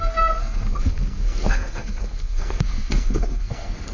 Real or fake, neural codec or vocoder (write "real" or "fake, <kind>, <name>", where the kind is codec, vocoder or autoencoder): fake, codec, SNAC